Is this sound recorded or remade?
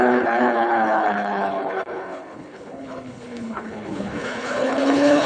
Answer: remade